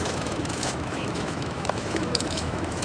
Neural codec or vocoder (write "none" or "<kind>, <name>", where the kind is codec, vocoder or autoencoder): autoencoder, DAC-VAE